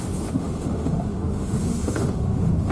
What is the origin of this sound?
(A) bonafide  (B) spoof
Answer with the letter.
B